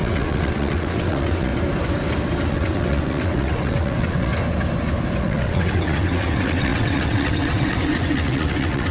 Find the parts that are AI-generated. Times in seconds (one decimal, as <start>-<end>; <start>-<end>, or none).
0.0-1.5; 2.5-4.3; 5.2-8.9